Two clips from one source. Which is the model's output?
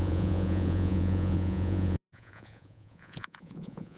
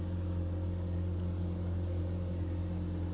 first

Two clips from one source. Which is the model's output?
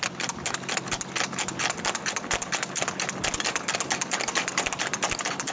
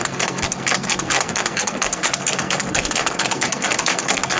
second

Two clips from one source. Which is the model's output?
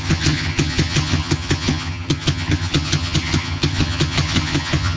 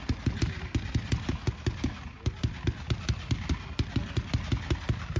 first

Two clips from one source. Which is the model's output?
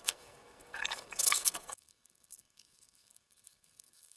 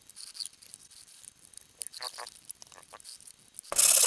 first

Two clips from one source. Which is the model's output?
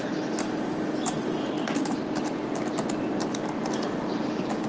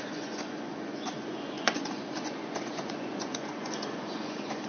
second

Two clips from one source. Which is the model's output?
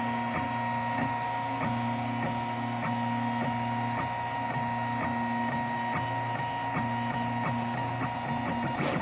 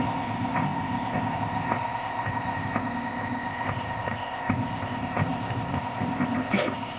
second